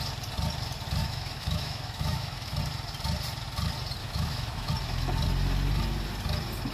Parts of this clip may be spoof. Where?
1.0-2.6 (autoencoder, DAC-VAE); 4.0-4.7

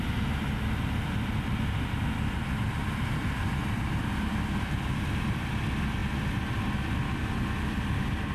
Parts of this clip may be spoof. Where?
0.0-3.6 (vocoder, BigVGAN v2); 4.6-6.0; 7.2-8.3

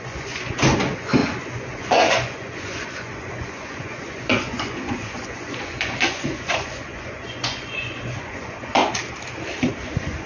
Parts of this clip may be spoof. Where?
0.0-8.8 (vocoder, Vocos); 9.8-10.3

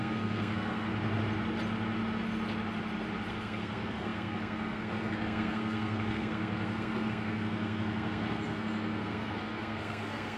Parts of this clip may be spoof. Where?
0.0-0.9 (codec, SNAC); 3.3-10.4